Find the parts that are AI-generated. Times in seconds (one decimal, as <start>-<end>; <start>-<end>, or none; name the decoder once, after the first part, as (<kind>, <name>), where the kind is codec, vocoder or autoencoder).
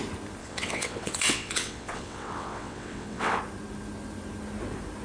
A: 0.4-3.4 (vocoder, WaveNeXt)